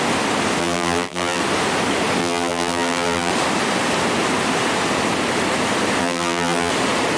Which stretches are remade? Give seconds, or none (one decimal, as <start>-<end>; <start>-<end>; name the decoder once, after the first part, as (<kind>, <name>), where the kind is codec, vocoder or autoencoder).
0.6-1.4 (vocoder, BigVGAN v2); 2.2-3.3; 6.0-6.7